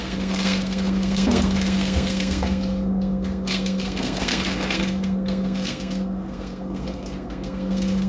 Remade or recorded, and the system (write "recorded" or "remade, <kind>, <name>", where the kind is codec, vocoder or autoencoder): remade, codec, SNAC